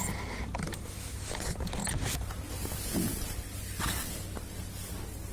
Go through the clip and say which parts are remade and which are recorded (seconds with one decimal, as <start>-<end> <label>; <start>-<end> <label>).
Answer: 0.0-5.3 recorded